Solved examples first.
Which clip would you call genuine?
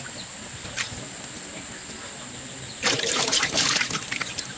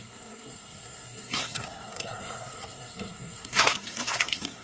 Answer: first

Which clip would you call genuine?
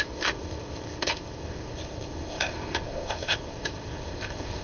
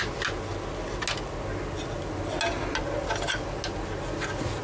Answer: second